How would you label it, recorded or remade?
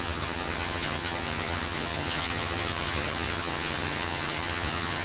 remade